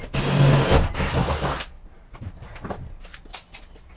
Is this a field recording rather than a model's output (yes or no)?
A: yes